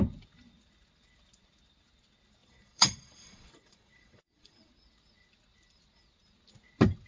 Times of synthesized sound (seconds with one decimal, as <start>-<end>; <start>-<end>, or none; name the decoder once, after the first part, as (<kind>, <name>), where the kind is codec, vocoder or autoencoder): 2.4-4.7 (vocoder, Vocos)